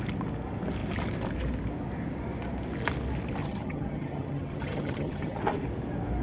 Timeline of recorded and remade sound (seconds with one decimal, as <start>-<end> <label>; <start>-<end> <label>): 0.0-3.4 recorded; 3.4-5.4 remade; 5.4-6.2 recorded